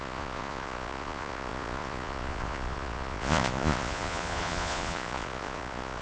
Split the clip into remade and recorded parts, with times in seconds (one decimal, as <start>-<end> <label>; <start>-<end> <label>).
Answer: 0.0-6.0 remade